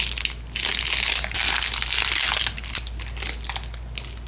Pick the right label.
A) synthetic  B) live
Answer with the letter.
B